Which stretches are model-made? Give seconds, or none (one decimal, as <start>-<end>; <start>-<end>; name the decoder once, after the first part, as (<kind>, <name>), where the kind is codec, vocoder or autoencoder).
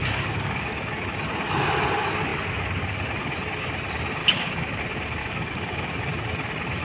0.0-0.9 (codec, DAC); 4.2-4.8; 5.2-6.0